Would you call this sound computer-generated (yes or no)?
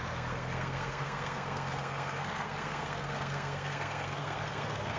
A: yes